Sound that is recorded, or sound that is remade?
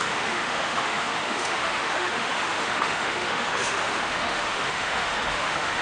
remade